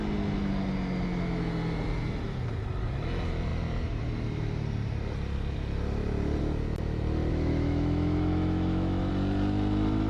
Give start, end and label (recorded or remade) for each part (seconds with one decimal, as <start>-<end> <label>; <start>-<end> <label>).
0.0-7.3 recorded; 7.3-9.1 remade; 9.1-10.1 recorded